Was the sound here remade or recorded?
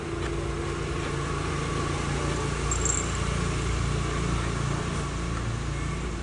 recorded